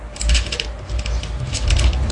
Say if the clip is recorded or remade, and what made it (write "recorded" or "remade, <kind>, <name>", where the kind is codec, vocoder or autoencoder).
recorded